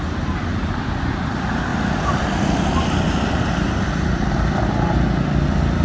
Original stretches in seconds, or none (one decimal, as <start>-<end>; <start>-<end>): 0.0-1.7; 4.3-5.8